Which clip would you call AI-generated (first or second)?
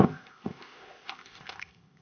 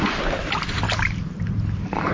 first